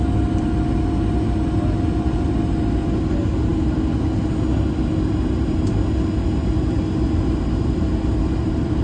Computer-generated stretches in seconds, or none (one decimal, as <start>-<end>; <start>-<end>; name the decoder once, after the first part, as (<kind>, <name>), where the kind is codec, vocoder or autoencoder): none